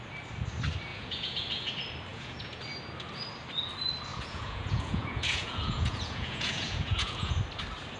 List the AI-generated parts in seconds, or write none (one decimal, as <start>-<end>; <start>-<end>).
0.9-1.7; 2.1-2.6; 4.1-7.4